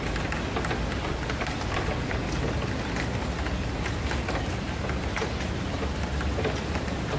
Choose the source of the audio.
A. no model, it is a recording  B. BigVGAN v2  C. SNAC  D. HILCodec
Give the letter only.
A